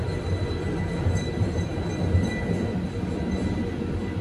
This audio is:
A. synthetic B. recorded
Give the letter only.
B